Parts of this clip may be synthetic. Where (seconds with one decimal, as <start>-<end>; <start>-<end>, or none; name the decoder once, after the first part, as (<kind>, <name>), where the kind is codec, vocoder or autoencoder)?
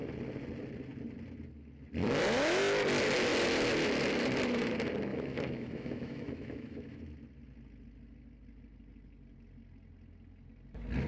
5.1-7.0 (autoencoder, DAC-VAE)